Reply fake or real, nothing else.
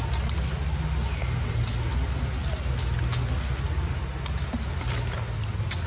real